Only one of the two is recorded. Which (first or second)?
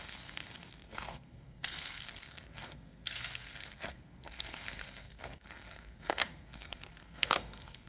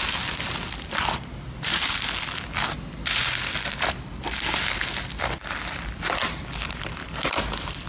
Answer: second